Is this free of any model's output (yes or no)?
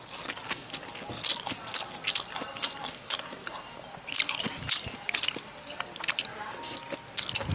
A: yes